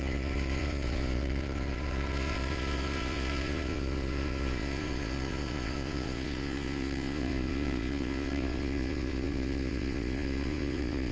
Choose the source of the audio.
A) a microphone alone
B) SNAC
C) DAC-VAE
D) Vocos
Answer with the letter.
D